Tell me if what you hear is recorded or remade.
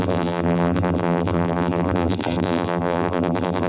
remade